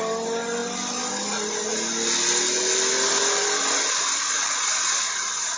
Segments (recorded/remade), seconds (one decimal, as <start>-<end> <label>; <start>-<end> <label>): 0.0-5.6 recorded